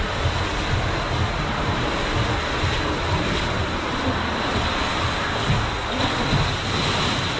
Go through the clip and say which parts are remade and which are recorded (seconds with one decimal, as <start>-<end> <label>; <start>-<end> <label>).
0.0-7.4 recorded